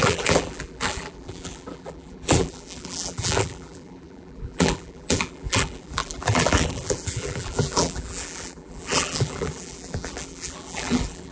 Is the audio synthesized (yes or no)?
yes